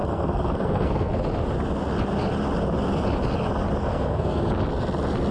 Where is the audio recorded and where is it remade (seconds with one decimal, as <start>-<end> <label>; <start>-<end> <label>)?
0.0-1.1 remade; 1.1-3.8 recorded; 3.8-4.4 remade; 4.4-5.3 recorded